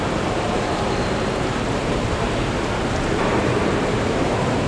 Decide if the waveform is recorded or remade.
remade